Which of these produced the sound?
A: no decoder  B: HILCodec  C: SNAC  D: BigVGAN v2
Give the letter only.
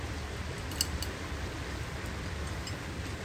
A